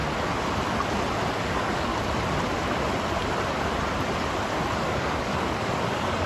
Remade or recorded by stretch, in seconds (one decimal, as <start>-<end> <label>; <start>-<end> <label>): 0.0-1.3 recorded; 1.3-1.9 remade; 1.9-4.8 recorded; 4.8-6.3 remade